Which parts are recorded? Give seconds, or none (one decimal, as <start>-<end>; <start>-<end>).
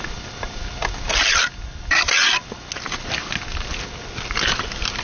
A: 0.0-5.0